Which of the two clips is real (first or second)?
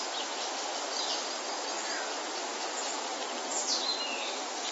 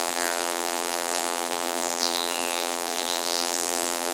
first